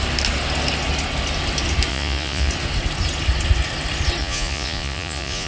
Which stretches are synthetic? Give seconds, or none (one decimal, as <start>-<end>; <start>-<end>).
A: 1.9-2.5; 4.2-5.5